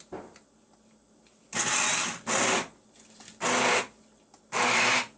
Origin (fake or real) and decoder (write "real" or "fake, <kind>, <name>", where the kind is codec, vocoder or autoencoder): real